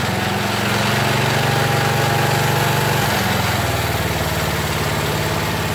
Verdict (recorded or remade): recorded